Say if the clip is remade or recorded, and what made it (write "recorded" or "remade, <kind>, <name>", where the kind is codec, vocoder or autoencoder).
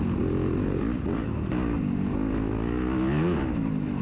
recorded